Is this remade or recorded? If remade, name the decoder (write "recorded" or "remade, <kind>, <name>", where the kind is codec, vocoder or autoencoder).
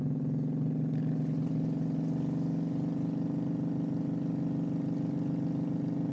recorded